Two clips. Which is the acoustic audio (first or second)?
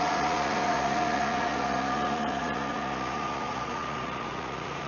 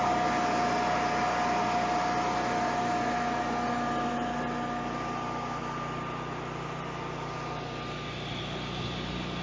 second